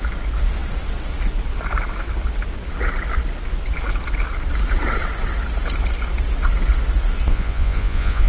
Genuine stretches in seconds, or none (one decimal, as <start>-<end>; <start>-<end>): 0.0-7.3